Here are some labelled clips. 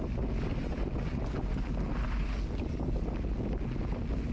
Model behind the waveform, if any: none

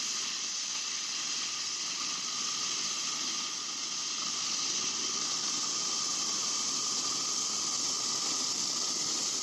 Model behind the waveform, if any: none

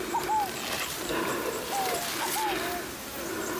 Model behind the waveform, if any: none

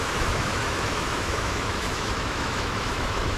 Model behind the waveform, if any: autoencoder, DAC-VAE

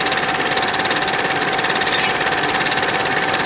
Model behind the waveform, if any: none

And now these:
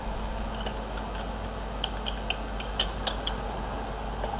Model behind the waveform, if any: none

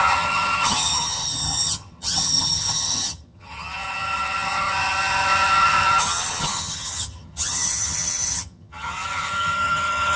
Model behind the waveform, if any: vocoder, HiFi-GAN